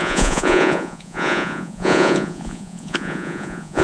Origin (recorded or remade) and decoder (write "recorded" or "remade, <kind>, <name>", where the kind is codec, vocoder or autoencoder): remade, vocoder, Vocos